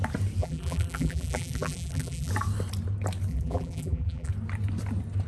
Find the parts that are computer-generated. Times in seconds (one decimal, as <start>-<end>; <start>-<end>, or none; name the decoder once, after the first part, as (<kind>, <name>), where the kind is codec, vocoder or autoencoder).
0.4-2.3 (vocoder, BigVGAN v2); 3.3-4.3